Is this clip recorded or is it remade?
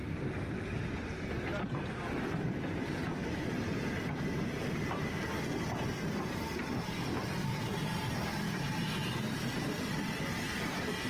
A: recorded